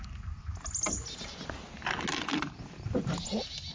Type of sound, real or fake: real